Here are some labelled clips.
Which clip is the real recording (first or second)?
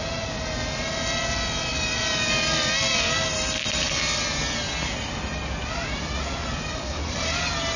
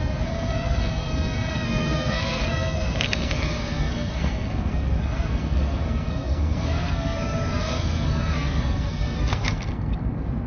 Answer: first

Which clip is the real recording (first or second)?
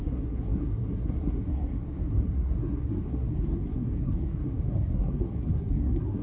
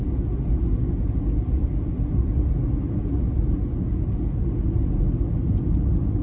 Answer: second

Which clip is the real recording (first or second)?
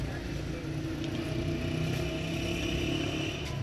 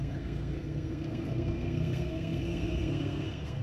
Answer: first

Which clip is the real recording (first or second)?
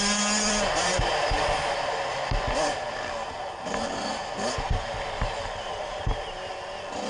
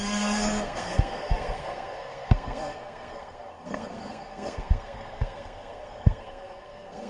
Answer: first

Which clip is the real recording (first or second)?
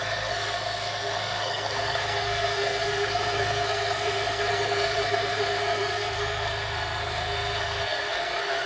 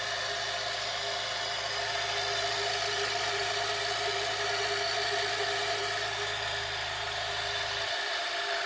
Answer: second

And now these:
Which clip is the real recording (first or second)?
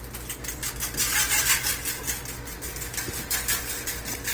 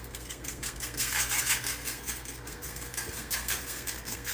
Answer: first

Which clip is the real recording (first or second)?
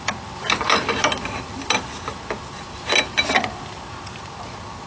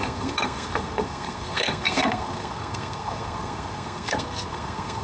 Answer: first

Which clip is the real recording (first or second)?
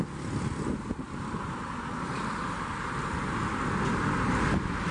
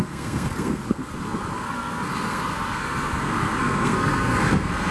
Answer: first